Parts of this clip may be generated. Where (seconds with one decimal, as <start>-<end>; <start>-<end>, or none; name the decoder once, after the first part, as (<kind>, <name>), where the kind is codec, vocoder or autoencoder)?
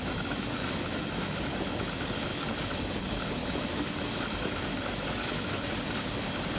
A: 0.0-1.8 (autoencoder, DAC-VAE); 2.3-2.8; 3.4-5.6